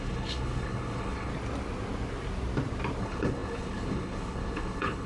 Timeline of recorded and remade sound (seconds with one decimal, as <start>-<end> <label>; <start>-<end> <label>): 0.0-1.3 remade; 1.3-3.0 recorded; 3.0-5.1 remade

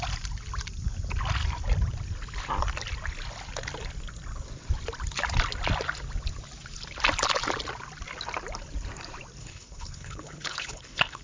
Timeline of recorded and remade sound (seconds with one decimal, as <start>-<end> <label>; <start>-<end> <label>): 0.0-9.4 recorded; 9.4-11.2 remade

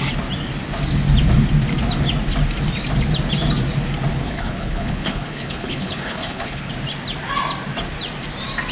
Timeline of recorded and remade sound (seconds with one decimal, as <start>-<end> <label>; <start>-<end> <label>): 0.0-4.2 recorded; 4.2-6.7 remade; 6.7-8.7 recorded

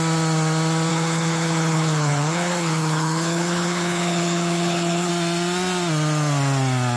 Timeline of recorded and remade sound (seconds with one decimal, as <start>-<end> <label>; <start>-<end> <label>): 0.0-0.9 recorded; 0.9-5.1 remade; 5.1-7.0 recorded

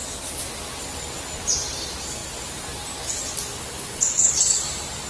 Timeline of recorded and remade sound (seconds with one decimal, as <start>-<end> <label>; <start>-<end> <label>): 0.0-3.5 recorded; 3.5-4.6 remade; 4.6-5.1 recorded